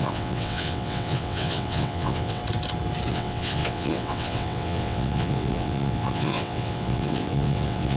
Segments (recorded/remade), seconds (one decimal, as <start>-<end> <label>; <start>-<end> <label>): 0.0-2.4 remade; 2.4-3.1 recorded; 3.1-8.0 remade